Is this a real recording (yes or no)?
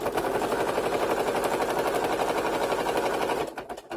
yes